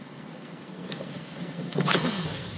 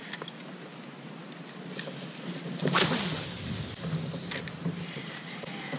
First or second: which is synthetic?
first